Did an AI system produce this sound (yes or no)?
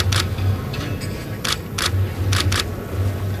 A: no